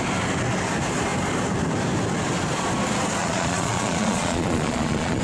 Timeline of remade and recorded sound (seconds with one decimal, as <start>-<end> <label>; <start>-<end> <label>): 0.0-3.2 recorded; 3.2-5.2 remade